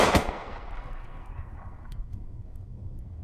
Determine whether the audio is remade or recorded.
remade